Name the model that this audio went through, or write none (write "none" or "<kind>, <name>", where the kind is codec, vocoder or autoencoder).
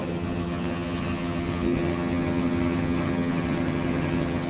vocoder, HiFi-GAN